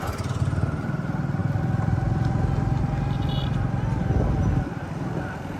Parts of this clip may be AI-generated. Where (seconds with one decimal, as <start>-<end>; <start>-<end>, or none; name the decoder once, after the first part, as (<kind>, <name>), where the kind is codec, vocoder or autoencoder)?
none